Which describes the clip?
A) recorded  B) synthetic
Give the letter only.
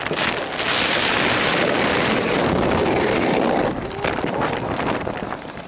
A